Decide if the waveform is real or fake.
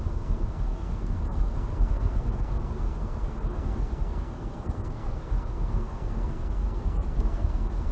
fake